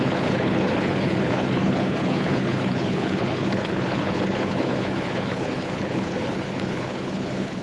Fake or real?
fake